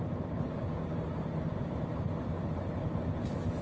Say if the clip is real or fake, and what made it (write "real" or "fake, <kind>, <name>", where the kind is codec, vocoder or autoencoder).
real